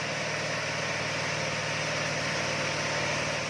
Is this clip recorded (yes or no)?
yes